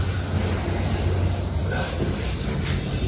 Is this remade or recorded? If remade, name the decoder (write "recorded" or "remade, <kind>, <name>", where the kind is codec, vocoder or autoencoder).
recorded